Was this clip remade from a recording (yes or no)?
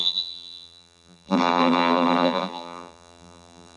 yes